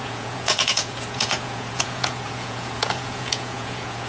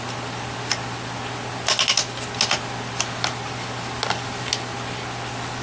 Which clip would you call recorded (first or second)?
second